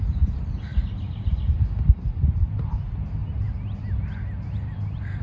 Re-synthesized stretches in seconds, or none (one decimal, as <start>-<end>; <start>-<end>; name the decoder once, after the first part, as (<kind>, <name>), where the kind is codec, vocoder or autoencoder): none